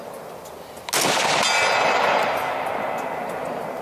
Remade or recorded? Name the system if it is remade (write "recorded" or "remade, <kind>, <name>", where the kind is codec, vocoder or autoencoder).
recorded